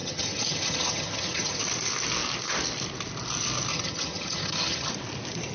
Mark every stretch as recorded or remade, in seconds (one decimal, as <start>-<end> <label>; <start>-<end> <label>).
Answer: 0.0-1.6 remade; 1.6-3.7 recorded; 3.7-4.9 remade; 4.9-5.5 recorded